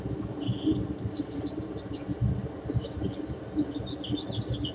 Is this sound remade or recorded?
recorded